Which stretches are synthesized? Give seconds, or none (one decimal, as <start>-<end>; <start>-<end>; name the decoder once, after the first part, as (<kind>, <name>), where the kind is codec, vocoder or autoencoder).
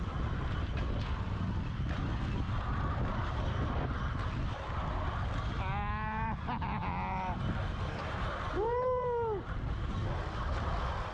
none